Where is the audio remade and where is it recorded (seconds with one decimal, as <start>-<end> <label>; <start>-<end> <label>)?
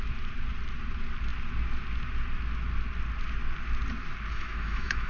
0.0-4.3 recorded; 4.3-5.1 remade